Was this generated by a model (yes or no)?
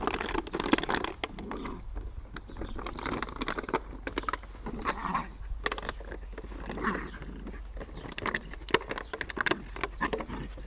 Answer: no